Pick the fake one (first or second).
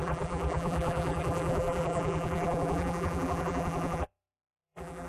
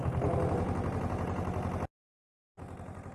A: first